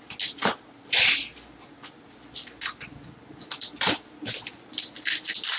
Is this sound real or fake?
real